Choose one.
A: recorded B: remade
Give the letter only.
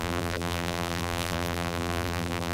B